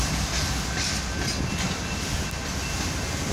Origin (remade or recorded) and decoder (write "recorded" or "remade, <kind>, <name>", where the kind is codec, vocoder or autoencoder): recorded